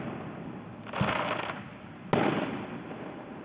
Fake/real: real